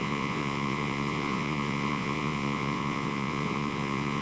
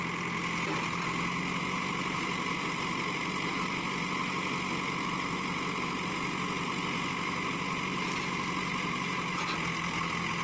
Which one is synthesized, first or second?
first